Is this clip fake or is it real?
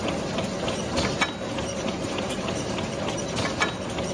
real